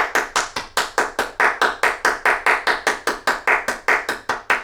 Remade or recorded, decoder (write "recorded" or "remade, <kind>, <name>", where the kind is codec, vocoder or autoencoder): recorded